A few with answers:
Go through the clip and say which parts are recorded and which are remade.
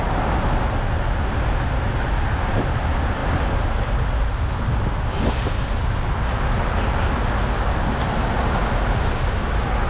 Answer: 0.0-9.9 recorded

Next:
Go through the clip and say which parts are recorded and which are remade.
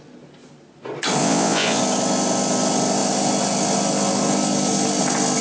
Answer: 0.0-1.2 recorded; 1.2-1.8 remade; 1.8-5.4 recorded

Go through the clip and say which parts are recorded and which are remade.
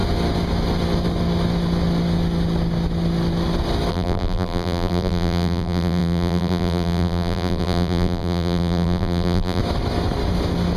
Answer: 0.0-3.9 recorded; 3.9-9.6 remade; 9.6-10.8 recorded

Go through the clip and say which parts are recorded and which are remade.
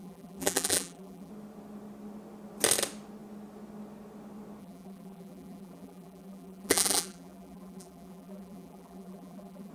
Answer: 0.0-1.3 remade; 1.3-4.6 recorded; 4.6-9.7 remade